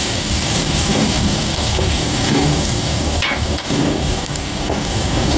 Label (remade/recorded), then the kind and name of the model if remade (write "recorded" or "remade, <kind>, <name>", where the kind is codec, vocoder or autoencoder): remade, codec, DAC